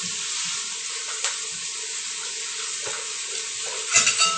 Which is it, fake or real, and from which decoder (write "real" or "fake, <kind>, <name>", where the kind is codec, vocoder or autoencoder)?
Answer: real